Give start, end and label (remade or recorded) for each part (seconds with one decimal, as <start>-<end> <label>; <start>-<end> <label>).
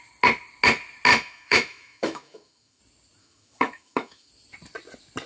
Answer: 0.0-1.1 recorded; 1.1-2.8 remade; 2.8-3.2 recorded; 3.2-4.3 remade; 4.3-5.3 recorded